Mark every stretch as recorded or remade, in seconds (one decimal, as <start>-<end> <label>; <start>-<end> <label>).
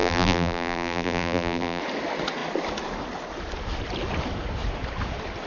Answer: 0.0-1.8 remade; 1.8-5.5 recorded